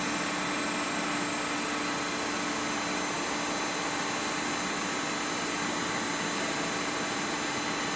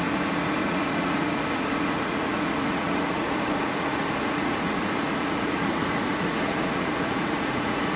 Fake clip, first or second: second